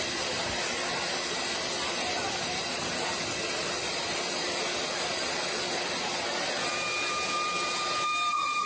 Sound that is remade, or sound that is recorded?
recorded